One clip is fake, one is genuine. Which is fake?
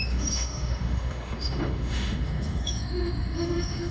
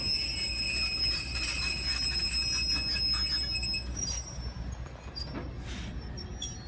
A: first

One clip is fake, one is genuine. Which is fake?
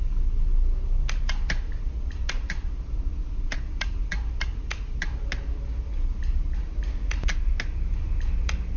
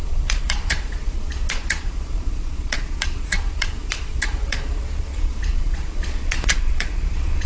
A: second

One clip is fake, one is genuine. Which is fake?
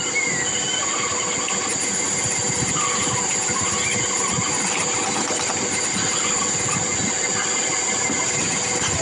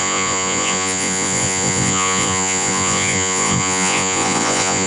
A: second